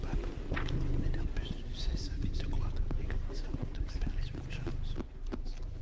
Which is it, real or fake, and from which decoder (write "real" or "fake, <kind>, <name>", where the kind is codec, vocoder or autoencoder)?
real